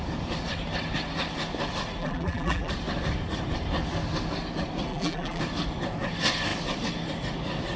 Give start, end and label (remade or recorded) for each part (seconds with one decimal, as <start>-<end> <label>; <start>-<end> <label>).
0.0-2.0 recorded; 2.0-2.7 remade; 2.7-4.9 recorded; 4.9-5.4 remade; 5.4-7.8 recorded